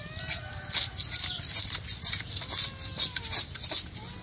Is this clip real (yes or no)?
yes